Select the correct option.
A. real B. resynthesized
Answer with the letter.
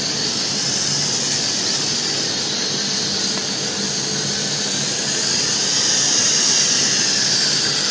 A